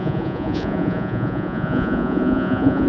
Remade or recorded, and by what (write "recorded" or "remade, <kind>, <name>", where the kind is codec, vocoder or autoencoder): remade, vocoder, Vocos